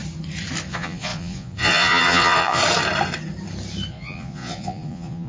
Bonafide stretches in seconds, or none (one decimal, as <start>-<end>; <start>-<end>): 0.0-0.7; 2.6-3.9